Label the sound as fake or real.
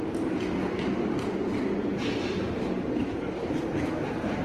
real